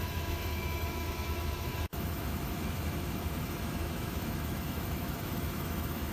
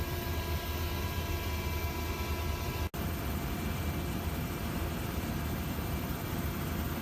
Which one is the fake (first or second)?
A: first